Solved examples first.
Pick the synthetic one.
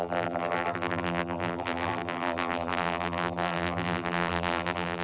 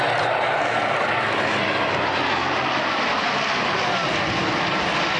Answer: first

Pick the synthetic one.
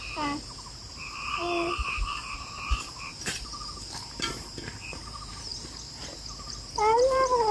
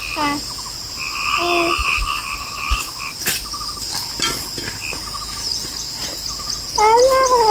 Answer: first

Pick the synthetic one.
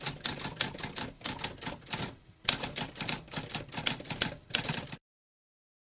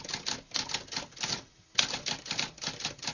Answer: first